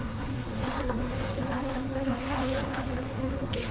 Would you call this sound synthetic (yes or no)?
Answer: yes